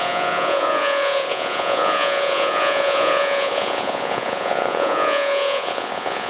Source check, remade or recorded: remade